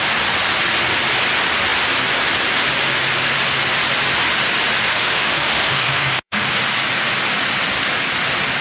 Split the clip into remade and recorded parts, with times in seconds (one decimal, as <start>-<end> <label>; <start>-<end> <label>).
0.0-4.9 recorded; 4.9-6.5 remade; 6.5-8.6 recorded